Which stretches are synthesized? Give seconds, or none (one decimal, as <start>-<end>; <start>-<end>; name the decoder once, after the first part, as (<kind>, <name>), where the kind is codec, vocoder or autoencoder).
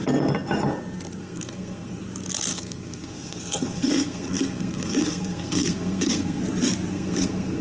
1.2-2.0 (codec, SNAC); 2.5-6.4; 6.9-7.6